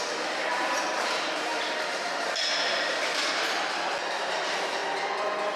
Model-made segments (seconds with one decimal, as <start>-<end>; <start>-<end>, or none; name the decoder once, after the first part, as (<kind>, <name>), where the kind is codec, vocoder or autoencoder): 0.0-3.2 (vocoder, BigVGAN v2); 4.2-4.8